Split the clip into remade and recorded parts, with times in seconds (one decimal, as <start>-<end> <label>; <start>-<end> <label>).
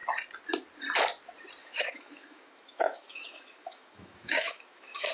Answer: 0.0-1.6 recorded; 1.6-5.1 remade